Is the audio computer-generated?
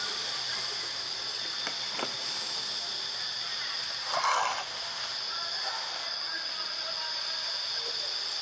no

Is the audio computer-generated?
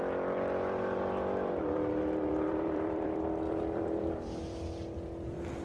yes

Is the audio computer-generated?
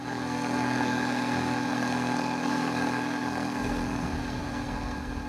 yes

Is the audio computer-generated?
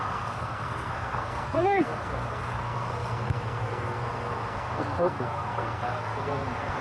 yes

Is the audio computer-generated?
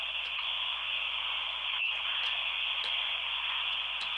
yes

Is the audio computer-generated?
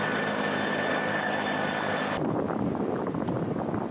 no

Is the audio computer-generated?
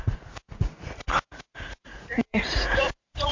yes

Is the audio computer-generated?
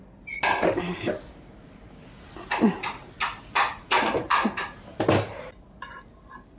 no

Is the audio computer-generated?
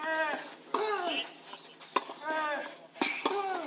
no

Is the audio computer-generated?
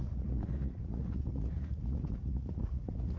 yes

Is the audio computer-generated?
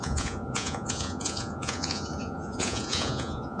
yes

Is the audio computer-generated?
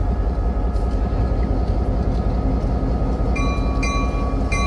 no